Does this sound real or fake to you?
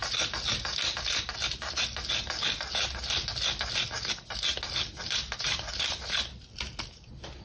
real